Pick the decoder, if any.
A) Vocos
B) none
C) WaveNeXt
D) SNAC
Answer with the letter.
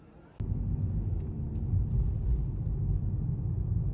B